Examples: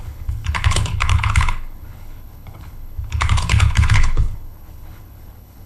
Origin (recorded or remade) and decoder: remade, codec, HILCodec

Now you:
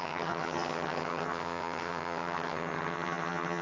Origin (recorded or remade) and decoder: remade, vocoder, HiFi-GAN